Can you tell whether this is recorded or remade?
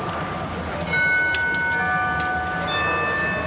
recorded